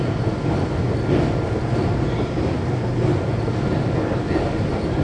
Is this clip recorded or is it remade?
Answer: recorded